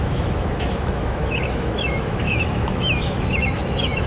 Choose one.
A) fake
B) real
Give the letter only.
A